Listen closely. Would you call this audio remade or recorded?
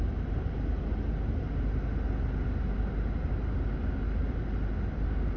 recorded